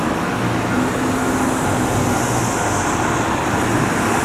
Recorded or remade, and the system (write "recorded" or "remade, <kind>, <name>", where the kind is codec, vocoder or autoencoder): recorded